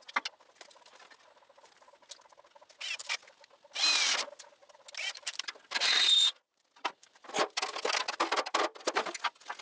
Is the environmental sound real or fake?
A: real